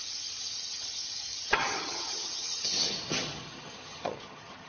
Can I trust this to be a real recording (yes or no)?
no